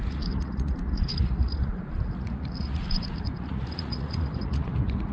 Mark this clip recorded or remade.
remade